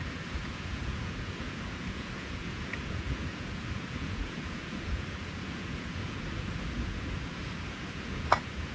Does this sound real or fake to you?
fake